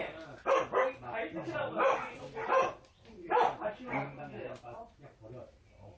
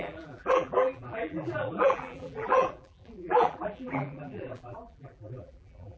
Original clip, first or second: first